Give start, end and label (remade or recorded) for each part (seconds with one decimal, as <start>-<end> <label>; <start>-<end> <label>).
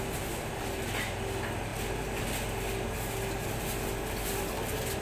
0.0-5.0 recorded